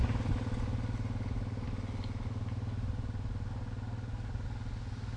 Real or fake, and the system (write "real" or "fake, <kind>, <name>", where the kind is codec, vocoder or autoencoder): real